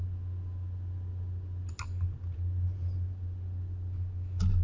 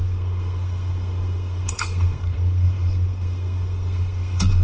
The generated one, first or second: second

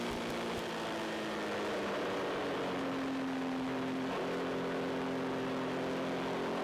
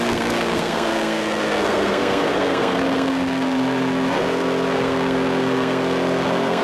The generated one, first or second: second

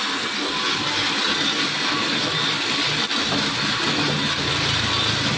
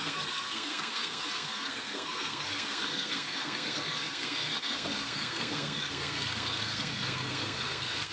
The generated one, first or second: second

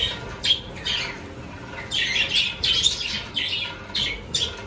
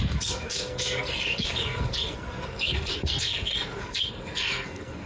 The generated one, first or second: second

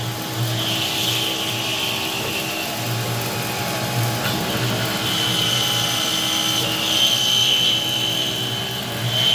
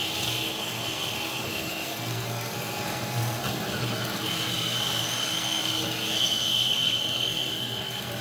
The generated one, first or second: second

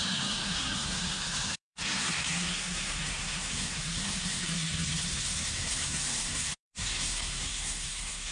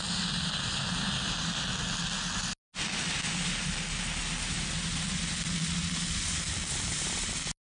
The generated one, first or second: first